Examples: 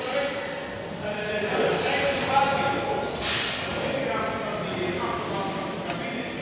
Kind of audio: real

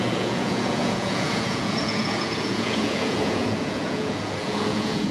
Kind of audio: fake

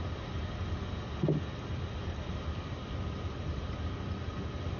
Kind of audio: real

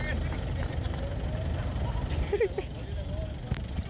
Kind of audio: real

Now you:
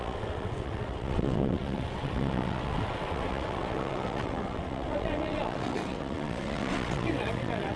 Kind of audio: fake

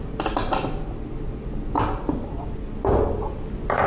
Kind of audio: real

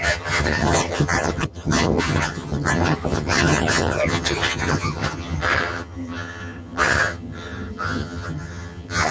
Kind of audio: fake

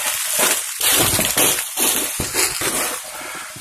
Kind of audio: real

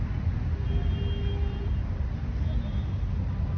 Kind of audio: real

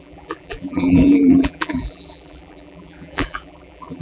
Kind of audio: fake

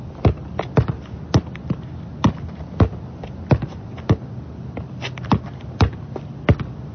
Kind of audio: real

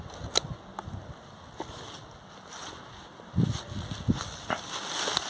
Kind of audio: real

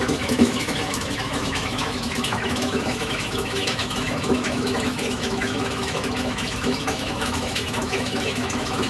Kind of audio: fake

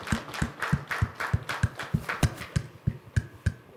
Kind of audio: real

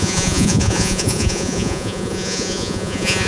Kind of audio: fake